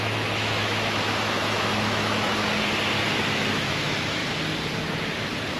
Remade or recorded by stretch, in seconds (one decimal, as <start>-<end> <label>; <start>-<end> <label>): 0.0-2.3 remade; 2.3-3.2 recorded; 3.2-4.2 remade; 4.2-5.6 recorded